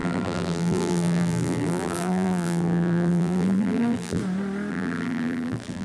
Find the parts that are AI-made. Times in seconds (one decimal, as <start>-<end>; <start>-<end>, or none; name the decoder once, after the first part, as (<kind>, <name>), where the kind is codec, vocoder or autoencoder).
0.0-4.2 (vocoder, BigVGAN v2); 4.7-5.8